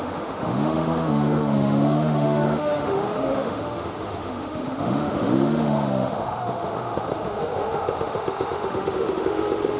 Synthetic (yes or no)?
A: yes